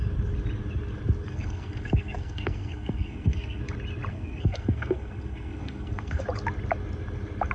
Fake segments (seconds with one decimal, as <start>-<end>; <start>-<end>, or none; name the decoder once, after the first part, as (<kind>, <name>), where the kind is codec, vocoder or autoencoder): 1.3-3.6 (codec, SNAC); 4.1-6.2